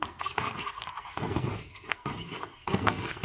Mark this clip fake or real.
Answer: fake